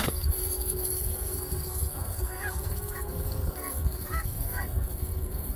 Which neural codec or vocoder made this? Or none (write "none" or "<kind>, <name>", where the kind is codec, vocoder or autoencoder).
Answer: codec, SNAC